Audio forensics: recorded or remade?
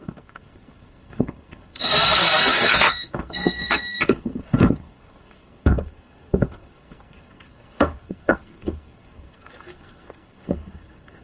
remade